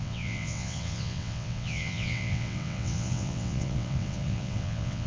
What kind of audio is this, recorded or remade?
remade